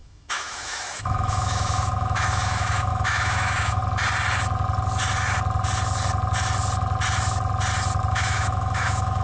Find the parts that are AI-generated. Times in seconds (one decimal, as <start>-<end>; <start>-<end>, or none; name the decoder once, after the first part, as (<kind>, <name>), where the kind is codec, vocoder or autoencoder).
0.0-3.8 (autoencoder, DAC-VAE); 8.1-9.2